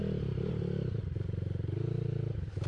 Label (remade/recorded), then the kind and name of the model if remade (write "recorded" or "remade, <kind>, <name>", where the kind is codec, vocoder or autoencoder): recorded